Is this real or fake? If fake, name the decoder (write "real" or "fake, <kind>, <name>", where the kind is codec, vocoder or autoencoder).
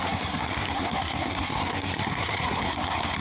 fake, codec, SNAC